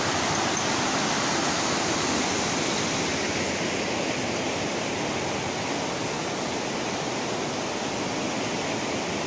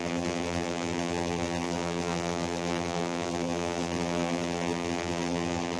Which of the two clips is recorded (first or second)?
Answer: first